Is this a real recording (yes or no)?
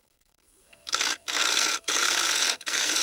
no